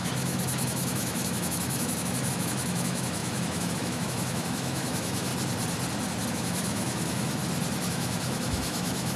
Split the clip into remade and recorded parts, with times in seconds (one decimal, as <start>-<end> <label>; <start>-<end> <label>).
0.0-5.3 remade; 5.3-6.3 recorded; 6.3-7.4 remade; 7.4-7.9 recorded; 7.9-9.2 remade